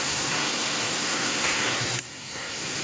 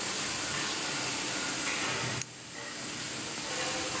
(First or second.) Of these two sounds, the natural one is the second